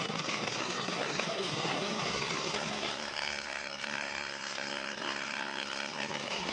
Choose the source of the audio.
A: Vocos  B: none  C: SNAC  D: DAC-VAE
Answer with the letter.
C